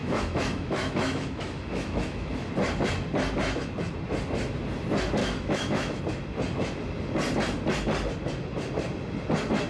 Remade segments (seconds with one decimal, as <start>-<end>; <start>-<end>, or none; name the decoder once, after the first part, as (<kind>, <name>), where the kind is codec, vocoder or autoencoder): 0.0-2.5 (autoencoder, DAC-VAE); 5.2-6.0